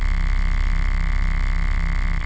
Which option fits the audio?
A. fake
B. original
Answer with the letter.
B